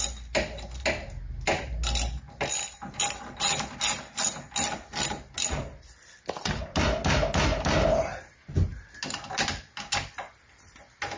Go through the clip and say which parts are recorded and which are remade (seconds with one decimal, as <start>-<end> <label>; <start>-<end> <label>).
0.0-11.2 recorded